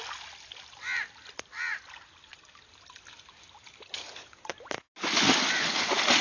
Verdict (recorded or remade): recorded